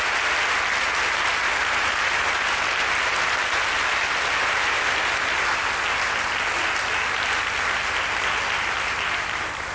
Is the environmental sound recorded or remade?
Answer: recorded